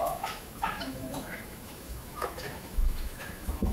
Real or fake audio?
fake